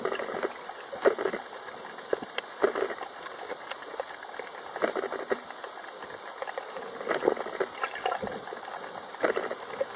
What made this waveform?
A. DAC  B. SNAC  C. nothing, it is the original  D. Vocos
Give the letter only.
C